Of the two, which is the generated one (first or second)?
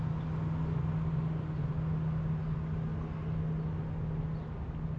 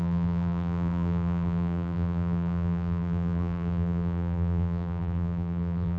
second